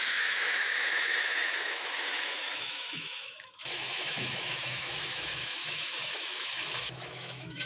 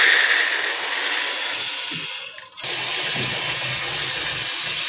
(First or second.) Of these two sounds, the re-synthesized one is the first